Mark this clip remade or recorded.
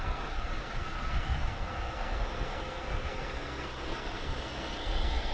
remade